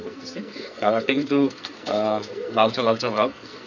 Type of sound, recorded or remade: remade